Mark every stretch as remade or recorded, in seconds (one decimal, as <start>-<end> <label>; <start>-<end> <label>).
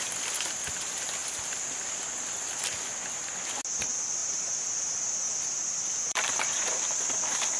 0.0-4.2 recorded; 4.2-7.0 remade; 7.0-7.6 recorded